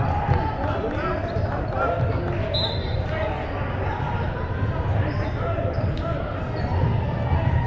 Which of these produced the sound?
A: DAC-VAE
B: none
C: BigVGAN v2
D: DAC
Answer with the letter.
B